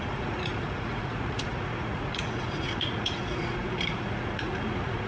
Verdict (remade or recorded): remade